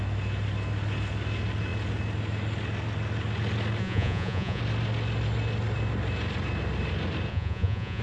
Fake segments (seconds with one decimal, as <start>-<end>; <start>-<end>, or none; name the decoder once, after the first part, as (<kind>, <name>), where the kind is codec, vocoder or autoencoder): 3.8-4.6 (vocoder, Vocos); 7.3-8.0